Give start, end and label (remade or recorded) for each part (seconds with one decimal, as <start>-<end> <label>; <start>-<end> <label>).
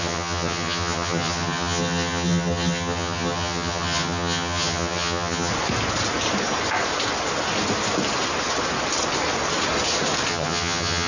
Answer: 0.0-5.5 remade; 5.5-10.3 recorded; 10.3-11.1 remade